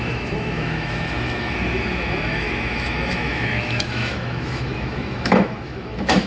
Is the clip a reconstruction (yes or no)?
yes